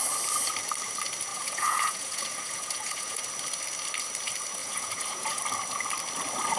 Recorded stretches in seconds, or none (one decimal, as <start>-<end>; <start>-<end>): 0.0-1.3; 3.2-4.6; 5.4-6.6